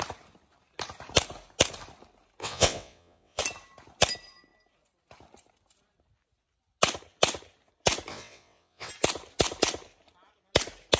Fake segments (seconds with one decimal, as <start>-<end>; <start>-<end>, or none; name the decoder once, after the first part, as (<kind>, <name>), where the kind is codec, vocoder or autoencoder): 2.4-3.4 (vocoder, WaveNeXt); 8.1-8.9